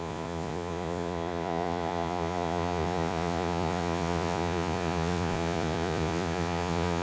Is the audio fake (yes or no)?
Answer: yes